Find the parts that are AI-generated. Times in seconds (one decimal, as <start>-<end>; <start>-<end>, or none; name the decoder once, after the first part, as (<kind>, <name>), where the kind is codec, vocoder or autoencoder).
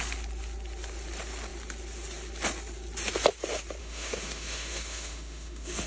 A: 3.8-5.9 (autoencoder, DAC-VAE)